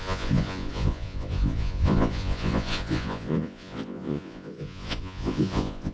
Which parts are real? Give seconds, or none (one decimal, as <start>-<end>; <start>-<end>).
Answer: none